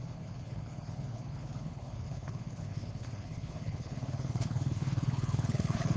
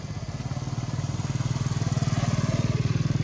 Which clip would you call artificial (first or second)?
first